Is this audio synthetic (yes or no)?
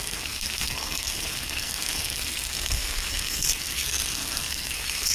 yes